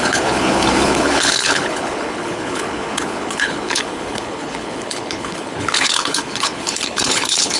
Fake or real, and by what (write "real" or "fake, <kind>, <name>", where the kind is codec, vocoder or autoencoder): fake, codec, HILCodec